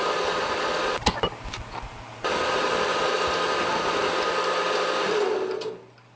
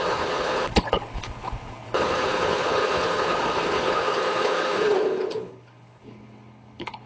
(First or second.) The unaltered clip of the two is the first